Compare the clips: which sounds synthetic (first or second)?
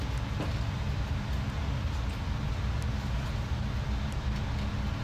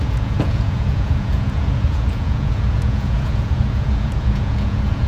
second